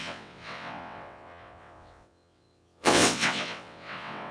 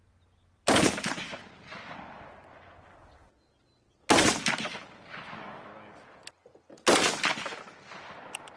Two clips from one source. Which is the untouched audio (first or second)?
second